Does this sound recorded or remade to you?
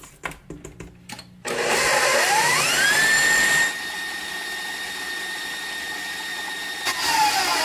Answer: recorded